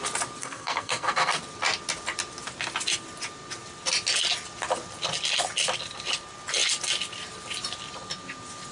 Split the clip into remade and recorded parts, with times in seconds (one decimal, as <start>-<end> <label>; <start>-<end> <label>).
0.0-0.4 recorded; 0.4-1.4 remade; 1.4-8.7 recorded